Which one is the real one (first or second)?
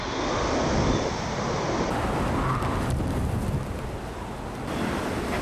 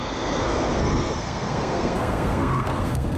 first